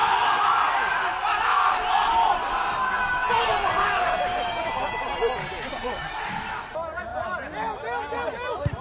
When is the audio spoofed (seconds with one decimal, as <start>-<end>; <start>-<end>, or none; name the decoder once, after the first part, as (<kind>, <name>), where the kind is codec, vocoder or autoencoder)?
0.0-0.6 (autoencoder, DAC-VAE)